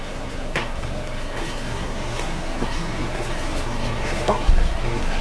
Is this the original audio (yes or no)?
no